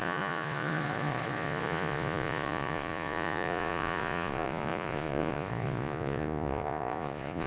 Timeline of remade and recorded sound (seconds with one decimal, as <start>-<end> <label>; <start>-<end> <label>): 0.0-7.5 remade